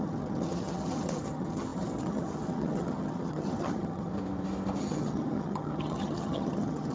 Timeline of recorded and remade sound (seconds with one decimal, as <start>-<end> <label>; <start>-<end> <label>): 0.0-4.1 remade; 4.1-4.8 recorded; 4.8-6.9 remade